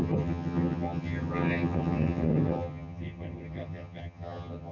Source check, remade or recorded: remade